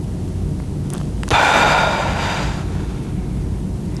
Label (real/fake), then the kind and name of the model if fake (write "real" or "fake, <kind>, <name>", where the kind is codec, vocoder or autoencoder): real